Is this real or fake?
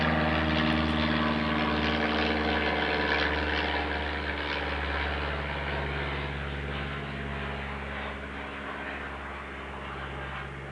real